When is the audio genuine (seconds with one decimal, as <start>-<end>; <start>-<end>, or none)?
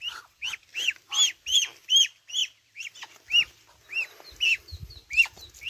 0.0-5.7